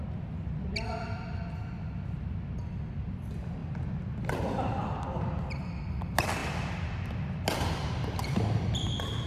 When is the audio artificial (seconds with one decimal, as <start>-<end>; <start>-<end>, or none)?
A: none